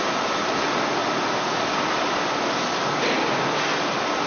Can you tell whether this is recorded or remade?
recorded